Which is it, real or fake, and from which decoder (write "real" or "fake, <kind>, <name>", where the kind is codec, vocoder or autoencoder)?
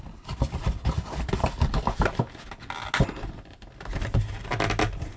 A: real